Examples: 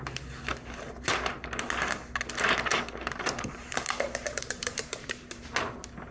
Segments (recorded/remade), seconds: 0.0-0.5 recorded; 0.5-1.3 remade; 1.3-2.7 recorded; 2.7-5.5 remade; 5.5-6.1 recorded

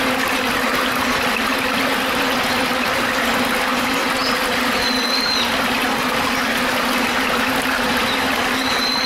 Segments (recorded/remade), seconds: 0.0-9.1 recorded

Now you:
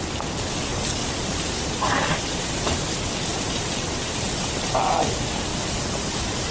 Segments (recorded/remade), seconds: 0.0-0.7 recorded; 0.7-2.6 remade; 2.6-3.3 recorded; 3.3-4.4 remade; 4.4-5.5 recorded; 5.5-6.5 remade

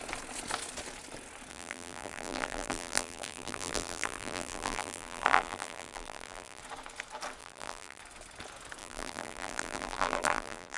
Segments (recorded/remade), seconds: 0.0-1.5 recorded; 1.5-6.6 remade; 6.6-7.4 recorded; 7.4-8.0 remade; 8.0-8.8 recorded; 8.8-10.8 remade

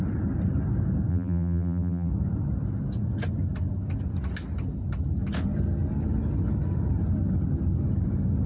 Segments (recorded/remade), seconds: 0.0-1.1 recorded; 1.1-2.1 remade; 2.1-8.5 recorded